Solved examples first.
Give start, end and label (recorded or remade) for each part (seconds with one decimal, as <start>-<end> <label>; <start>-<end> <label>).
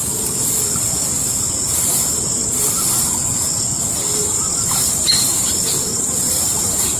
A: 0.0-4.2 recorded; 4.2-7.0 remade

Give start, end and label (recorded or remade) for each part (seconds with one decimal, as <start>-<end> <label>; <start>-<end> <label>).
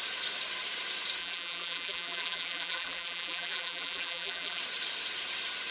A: 0.0-1.2 recorded; 1.2-4.6 remade; 4.6-5.7 recorded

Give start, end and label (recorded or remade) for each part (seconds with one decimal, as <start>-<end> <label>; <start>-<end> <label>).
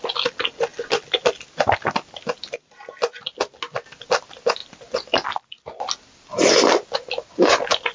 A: 0.0-7.9 recorded